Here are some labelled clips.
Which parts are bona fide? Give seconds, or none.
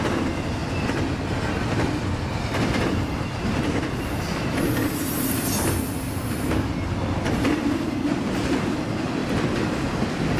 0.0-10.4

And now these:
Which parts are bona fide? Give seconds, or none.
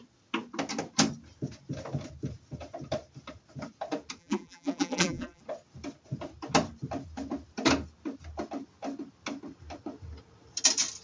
0.0-4.2; 5.4-11.0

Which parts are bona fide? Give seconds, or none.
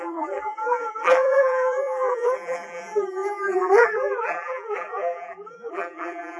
none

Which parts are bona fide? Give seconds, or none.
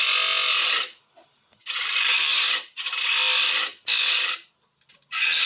0.0-5.5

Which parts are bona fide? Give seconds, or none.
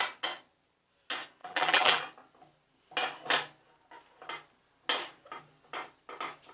0.0-1.4; 2.0-6.5